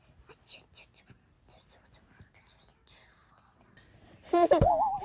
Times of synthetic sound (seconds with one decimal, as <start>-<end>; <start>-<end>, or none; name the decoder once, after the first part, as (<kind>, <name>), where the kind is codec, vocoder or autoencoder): none